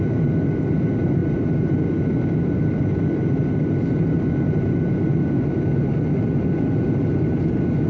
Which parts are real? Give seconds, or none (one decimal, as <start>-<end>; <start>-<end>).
0.0-7.9